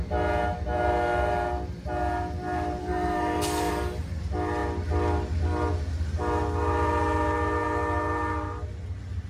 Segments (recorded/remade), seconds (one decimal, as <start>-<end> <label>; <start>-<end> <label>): 0.0-2.8 recorded; 2.8-3.7 remade; 3.7-9.3 recorded